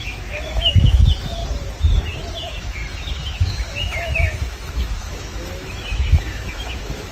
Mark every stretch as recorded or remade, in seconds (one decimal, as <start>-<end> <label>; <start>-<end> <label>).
0.0-1.4 remade; 1.4-2.3 recorded; 2.3-7.1 remade